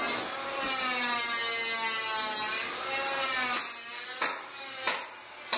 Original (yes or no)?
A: yes